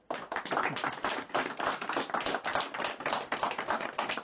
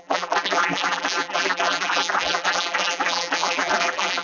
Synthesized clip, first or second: second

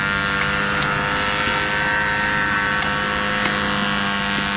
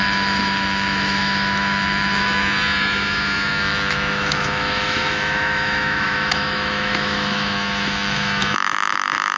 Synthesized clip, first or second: second